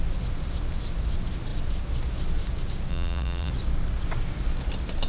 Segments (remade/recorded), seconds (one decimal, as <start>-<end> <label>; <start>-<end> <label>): 0.0-2.9 recorded; 2.9-3.5 remade; 3.5-5.1 recorded